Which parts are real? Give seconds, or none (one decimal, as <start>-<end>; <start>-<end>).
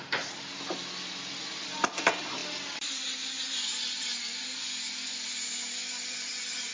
0.0-6.7